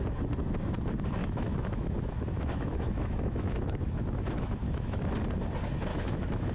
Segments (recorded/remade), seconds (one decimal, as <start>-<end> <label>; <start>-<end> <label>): 0.0-1.2 recorded; 1.2-5.1 remade; 5.1-5.9 recorded; 5.9-6.5 remade